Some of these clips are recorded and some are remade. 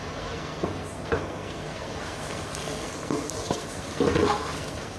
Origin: remade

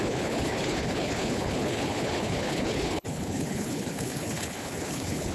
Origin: remade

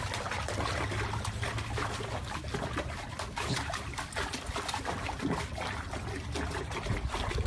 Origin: recorded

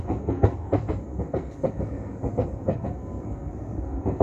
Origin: remade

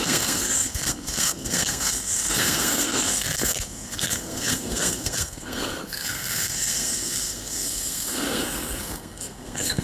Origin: remade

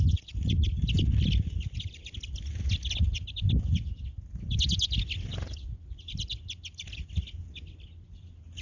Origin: recorded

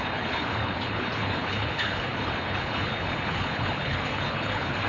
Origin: remade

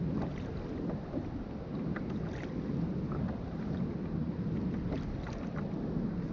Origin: recorded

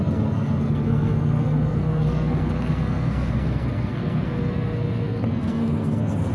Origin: remade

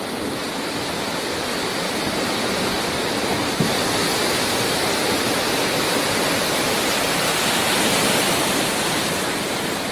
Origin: remade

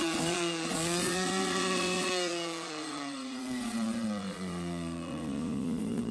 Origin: remade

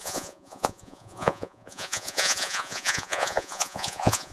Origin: remade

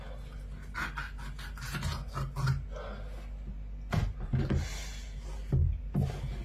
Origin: recorded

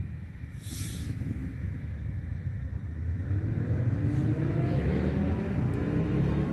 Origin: remade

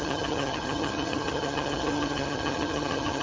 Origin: remade